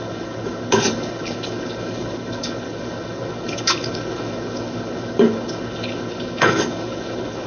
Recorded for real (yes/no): no